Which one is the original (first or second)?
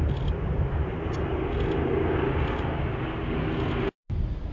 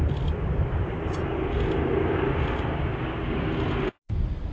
first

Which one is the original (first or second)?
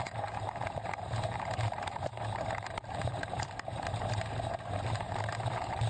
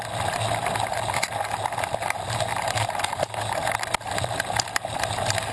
second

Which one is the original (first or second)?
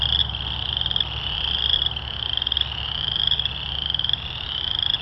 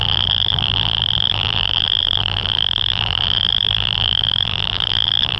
first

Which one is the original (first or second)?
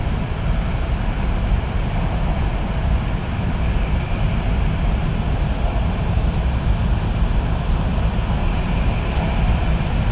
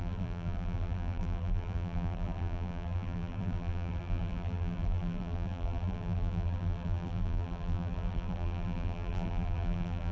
first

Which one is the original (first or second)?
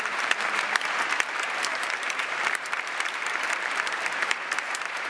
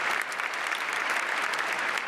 second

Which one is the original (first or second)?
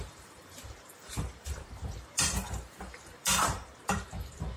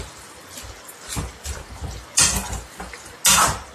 second